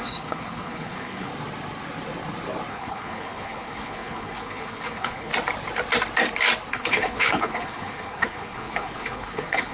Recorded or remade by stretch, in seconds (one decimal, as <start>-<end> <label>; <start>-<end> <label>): 0.0-1.3 remade; 1.3-2.7 recorded; 2.7-5.3 remade; 5.3-6.7 recorded; 6.7-9.7 remade